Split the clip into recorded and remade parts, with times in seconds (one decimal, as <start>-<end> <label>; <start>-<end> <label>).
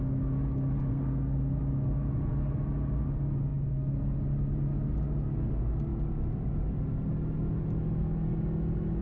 0.0-0.9 recorded; 0.9-1.6 remade; 1.6-9.0 recorded